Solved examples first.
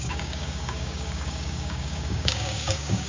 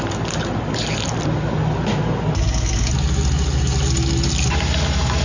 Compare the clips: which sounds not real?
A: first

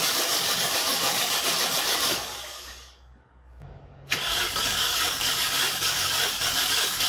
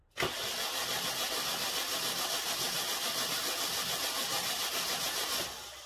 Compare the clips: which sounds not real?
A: first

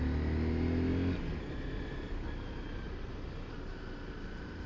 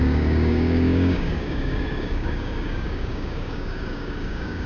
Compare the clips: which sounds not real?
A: second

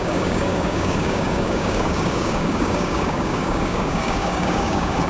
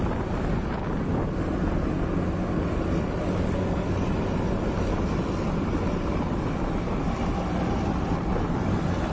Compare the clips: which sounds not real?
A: first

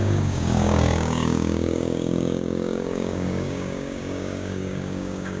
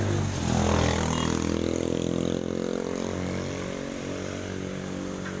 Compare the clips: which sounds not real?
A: first